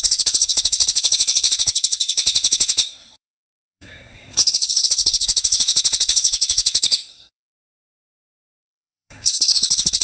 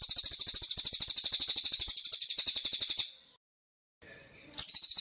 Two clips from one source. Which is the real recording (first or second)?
second